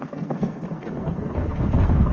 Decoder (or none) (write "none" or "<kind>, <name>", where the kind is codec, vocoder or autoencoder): codec, SNAC